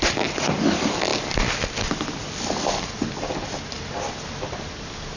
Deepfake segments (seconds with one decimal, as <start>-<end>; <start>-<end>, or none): 0.0-5.2